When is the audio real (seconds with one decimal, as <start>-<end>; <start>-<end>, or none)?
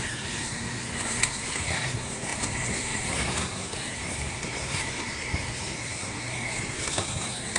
none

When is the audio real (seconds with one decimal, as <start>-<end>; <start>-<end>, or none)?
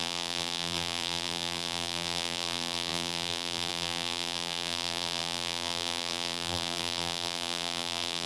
none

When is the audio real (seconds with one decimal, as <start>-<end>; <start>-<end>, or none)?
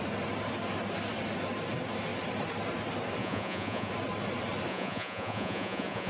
0.0-3.2; 3.9-4.7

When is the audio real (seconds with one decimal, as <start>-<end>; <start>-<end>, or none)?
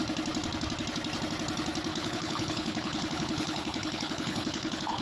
0.0-1.9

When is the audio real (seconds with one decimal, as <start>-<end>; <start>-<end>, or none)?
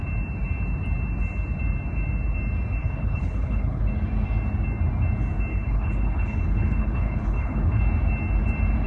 0.0-2.8; 3.8-5.5; 7.8-8.9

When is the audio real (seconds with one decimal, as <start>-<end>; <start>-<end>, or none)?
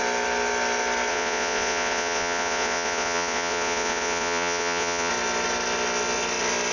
0.0-1.1; 5.1-6.7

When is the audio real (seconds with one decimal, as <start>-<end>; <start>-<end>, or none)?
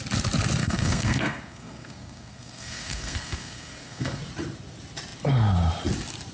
0.0-0.6; 4.2-6.3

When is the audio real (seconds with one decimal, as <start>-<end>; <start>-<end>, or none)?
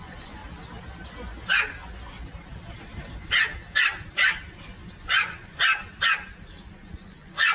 0.4-4.9; 5.7-6.7